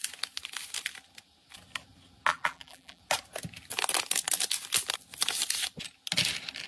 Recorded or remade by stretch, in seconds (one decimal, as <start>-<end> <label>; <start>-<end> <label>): 0.0-2.3 recorded; 2.3-3.0 remade; 3.0-6.7 recorded